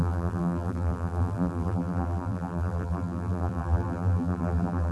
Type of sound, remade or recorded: remade